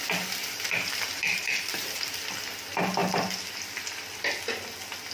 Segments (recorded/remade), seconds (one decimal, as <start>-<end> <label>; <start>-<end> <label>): 0.0-0.4 recorded; 0.4-2.2 remade; 2.2-5.1 recorded